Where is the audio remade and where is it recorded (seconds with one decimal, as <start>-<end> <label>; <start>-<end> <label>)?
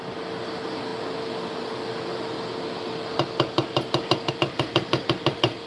0.0-5.7 recorded